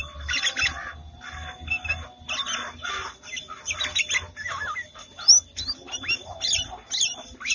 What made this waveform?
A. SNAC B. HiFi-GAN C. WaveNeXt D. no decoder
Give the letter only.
D